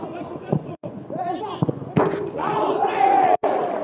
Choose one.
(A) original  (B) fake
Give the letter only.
B